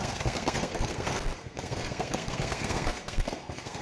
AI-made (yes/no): yes